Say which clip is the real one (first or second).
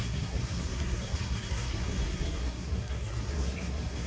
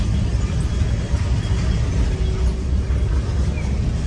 second